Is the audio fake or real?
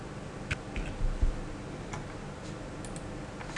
real